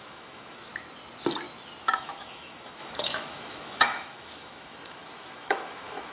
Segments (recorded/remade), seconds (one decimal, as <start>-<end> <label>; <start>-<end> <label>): 0.0-0.7 remade; 0.7-1.8 recorded; 1.8-6.1 remade